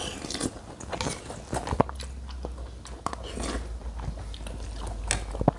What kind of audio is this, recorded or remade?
recorded